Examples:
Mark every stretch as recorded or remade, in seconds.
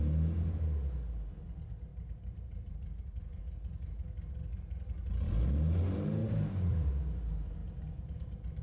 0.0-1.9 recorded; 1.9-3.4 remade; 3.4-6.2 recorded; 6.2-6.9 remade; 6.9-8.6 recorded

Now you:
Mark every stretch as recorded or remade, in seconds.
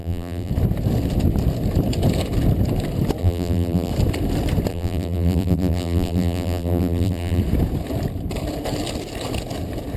0.0-0.5 remade; 0.5-3.2 recorded; 3.2-3.9 remade; 3.9-4.7 recorded; 4.7-7.4 remade; 7.4-10.0 recorded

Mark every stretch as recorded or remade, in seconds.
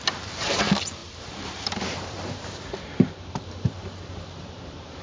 0.0-5.0 remade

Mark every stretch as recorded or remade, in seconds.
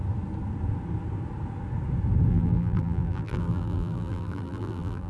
0.0-2.3 recorded; 2.3-5.1 remade